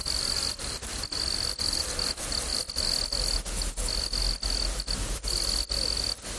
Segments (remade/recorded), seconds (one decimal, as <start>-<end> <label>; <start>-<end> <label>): 0.0-6.4 recorded

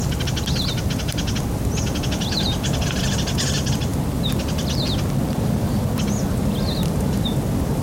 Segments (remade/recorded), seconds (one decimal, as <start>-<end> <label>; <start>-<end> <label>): 0.0-7.8 recorded

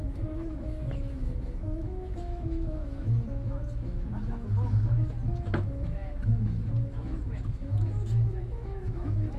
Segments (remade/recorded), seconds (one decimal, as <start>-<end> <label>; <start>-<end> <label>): 0.0-9.4 remade

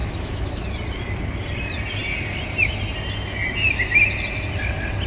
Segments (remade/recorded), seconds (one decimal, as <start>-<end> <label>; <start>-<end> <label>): 0.0-0.6 remade; 0.6-5.1 recorded

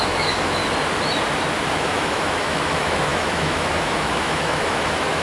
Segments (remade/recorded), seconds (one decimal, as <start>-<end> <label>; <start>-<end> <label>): 0.0-0.6 remade; 0.6-1.7 recorded; 1.7-5.2 remade